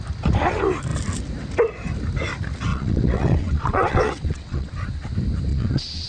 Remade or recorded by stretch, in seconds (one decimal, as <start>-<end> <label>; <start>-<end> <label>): 0.0-2.7 recorded; 2.7-4.7 remade; 4.7-5.5 recorded; 5.5-6.1 remade